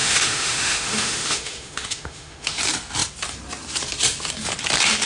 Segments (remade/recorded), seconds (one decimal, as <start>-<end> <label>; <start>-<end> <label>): 0.0-2.6 remade; 2.6-5.1 recorded